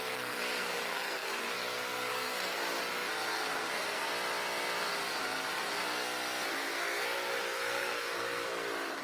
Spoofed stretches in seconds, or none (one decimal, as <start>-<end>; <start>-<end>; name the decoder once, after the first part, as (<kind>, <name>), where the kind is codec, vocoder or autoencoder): 0.0-2.8 (codec, SNAC); 3.3-4.1; 6.5-9.0